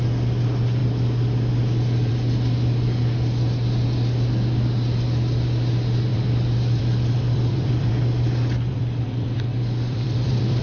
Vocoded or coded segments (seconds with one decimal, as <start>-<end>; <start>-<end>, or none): 6.1-7.9; 8.7-10.6